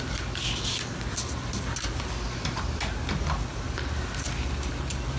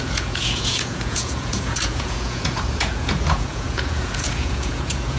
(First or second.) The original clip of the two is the first